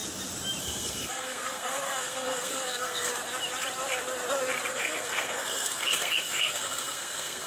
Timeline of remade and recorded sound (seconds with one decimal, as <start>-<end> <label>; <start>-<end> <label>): 0.0-0.6 recorded; 0.6-3.1 remade; 3.1-4.7 recorded; 4.7-7.5 remade